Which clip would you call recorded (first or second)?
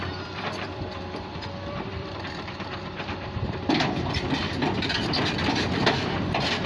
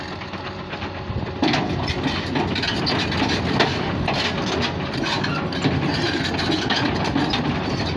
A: second